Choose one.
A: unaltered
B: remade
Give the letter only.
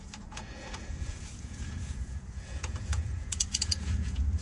B